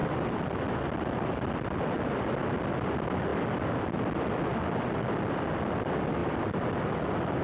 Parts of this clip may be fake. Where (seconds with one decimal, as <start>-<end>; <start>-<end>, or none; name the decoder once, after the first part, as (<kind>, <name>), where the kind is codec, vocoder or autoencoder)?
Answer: 0.0-0.8 (vocoder, BigVGAN v2); 6.2-6.9